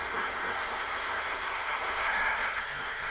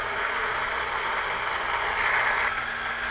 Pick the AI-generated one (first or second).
first